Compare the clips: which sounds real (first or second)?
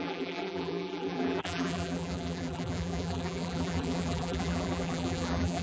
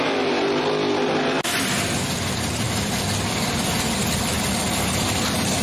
second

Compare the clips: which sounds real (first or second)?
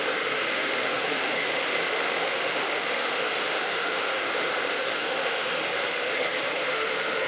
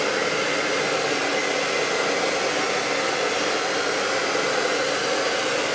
second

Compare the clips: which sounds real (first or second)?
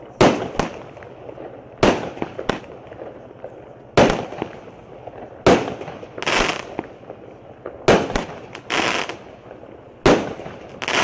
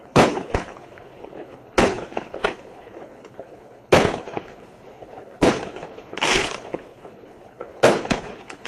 first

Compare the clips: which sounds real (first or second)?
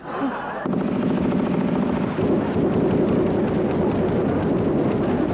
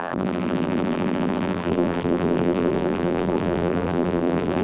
first